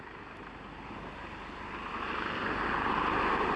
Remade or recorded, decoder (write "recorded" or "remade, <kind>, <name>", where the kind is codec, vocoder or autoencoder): recorded